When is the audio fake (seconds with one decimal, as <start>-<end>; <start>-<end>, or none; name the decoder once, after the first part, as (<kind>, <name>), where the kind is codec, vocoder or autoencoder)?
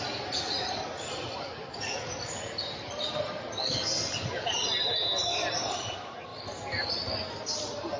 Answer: none